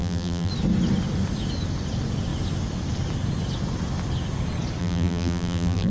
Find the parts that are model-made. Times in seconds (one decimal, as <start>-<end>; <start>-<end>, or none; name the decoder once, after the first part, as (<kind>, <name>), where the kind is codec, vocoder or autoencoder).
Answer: 0.0-0.5 (vocoder, BigVGAN v2); 4.8-5.9